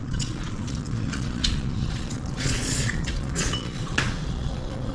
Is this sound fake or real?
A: fake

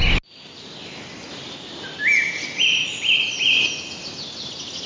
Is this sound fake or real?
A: real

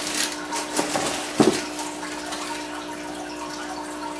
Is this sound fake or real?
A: real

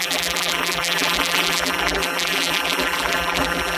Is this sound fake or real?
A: fake